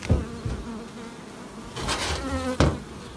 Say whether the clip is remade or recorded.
recorded